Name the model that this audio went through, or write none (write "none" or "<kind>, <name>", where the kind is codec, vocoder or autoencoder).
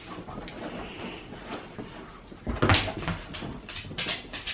none